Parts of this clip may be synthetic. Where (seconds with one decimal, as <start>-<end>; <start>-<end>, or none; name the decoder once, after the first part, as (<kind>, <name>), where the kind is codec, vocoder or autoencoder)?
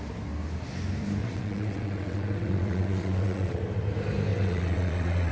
1.2-3.6 (vocoder, WaveNeXt); 4.3-5.3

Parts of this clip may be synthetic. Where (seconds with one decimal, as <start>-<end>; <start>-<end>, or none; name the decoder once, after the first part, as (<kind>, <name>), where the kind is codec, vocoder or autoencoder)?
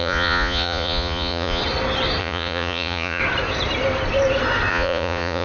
0.0-1.6 (vocoder, Vocos); 2.2-3.2; 4.7-5.4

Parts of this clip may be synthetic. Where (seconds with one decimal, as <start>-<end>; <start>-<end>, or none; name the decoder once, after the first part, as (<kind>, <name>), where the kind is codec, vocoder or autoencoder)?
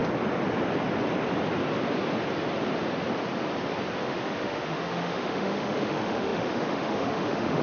4.0-7.6 (autoencoder, DAC-VAE)